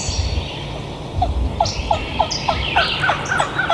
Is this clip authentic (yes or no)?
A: yes